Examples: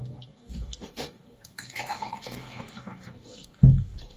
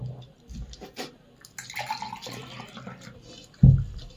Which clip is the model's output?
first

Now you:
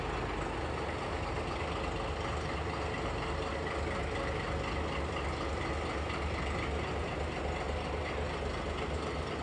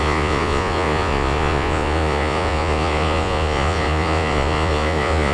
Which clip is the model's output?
second